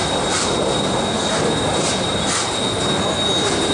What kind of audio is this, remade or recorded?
recorded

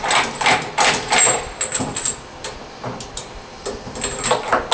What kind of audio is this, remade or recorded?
recorded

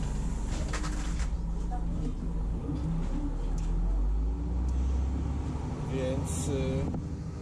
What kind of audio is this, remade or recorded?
recorded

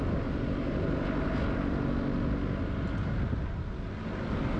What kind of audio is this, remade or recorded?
recorded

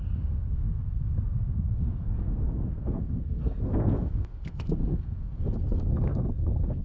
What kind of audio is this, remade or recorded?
remade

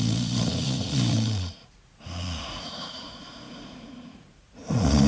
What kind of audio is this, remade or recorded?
remade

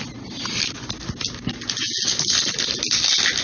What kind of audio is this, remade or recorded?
recorded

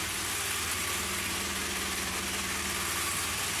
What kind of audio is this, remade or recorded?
recorded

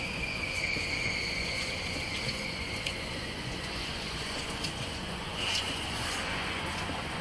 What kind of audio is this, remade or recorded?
remade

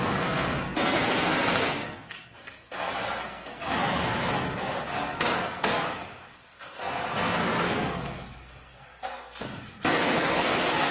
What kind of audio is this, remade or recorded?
remade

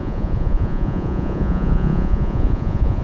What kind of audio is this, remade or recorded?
remade